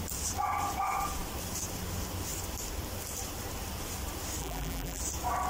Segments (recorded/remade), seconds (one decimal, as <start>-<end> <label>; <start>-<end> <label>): 0.0-4.4 recorded; 4.4-5.0 remade; 5.0-5.5 recorded